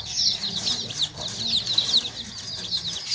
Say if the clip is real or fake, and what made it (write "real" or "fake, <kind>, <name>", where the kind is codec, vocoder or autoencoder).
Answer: real